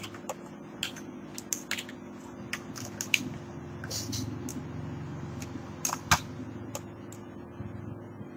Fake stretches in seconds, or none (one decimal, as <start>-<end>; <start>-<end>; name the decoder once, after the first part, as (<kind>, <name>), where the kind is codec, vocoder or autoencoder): none